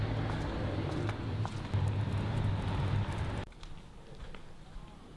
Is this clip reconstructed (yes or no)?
no